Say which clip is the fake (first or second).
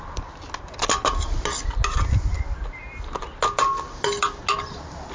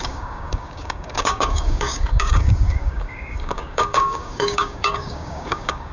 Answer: second